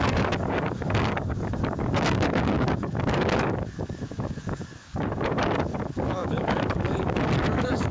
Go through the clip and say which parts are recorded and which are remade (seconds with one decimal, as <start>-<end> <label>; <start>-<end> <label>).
0.0-7.9 remade

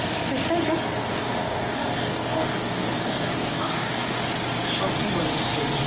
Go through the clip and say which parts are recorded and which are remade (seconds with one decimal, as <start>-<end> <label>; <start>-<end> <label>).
0.0-1.0 recorded; 1.0-4.2 remade; 4.2-5.9 recorded

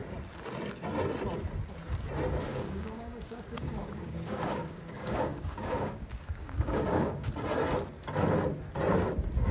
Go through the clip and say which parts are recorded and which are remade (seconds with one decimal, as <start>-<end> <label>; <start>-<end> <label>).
0.0-2.5 recorded; 2.5-7.3 remade; 7.3-9.5 recorded

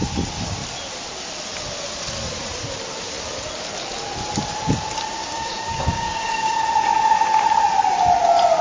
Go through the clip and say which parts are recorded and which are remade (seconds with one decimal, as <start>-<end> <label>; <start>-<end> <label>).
0.0-5.2 recorded; 5.2-6.6 remade; 6.6-8.6 recorded

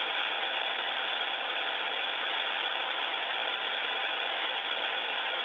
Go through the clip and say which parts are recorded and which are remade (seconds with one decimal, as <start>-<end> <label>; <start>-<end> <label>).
0.0-5.4 recorded

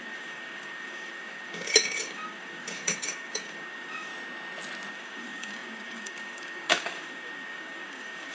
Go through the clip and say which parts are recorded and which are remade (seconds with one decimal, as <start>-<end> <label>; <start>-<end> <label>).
0.0-4.1 remade; 4.1-4.9 recorded; 4.9-8.3 remade

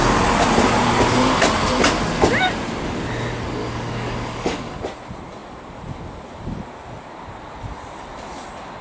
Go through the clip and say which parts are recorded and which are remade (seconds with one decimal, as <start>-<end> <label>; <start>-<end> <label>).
0.0-3.6 recorded; 3.6-4.8 remade; 4.8-8.8 recorded